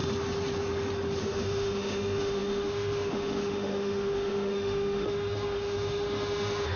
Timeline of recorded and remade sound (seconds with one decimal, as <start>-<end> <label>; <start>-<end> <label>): 0.0-1.2 recorded; 1.2-6.8 remade